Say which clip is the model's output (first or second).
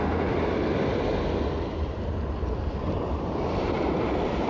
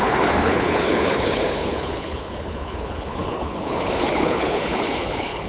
second